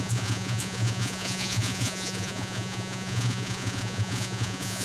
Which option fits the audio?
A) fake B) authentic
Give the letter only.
A